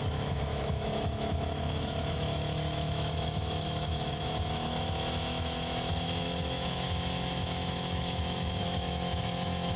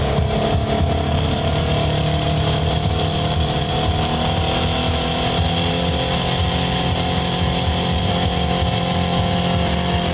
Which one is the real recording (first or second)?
second